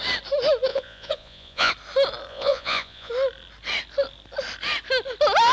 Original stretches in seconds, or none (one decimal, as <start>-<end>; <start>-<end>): 0.0-0.7; 1.7-2.3; 3.1-5.5

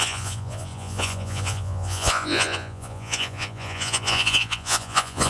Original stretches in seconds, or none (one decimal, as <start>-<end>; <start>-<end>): none

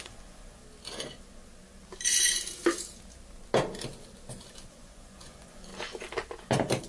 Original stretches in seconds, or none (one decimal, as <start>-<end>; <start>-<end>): 0.6-4.7; 5.7-6.9

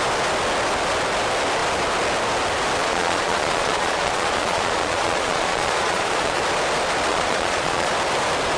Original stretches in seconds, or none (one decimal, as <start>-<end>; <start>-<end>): 0.0-2.8; 6.4-7.1; 7.9-8.6

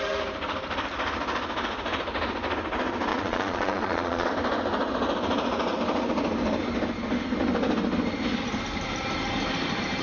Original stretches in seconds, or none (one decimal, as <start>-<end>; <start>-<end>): 0.0-3.1; 4.3-10.0